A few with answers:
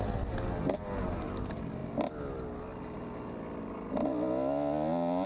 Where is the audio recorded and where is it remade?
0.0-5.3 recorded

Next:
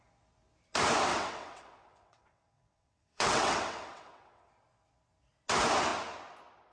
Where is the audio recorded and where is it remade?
0.0-1.1 recorded; 1.1-4.5 remade; 4.5-6.7 recorded

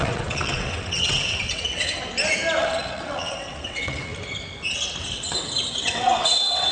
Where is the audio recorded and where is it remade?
0.0-2.0 remade; 2.0-2.6 recorded; 2.6-4.1 remade; 4.1-5.0 recorded; 5.0-6.7 remade

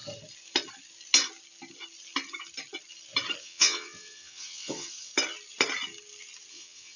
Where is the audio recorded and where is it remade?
0.0-3.4 recorded; 3.4-5.1 remade; 5.1-6.5 recorded; 6.5-7.0 remade

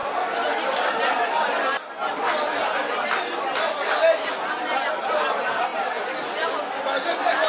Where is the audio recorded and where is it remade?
0.0-7.5 recorded

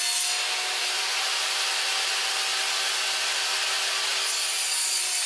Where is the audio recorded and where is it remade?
0.0-5.3 recorded